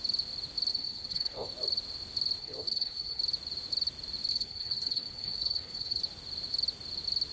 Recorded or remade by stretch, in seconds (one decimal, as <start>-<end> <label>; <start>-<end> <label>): 0.0-0.7 recorded; 0.7-1.5 remade; 1.5-2.4 recorded; 2.4-3.2 remade; 3.2-4.3 recorded; 4.3-6.0 remade; 6.0-7.3 recorded